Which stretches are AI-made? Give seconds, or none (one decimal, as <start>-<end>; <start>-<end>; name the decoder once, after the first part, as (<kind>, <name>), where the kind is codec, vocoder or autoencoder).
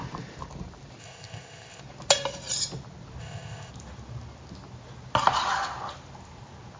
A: 1.0-1.8 (codec, ZipCodec); 3.2-3.7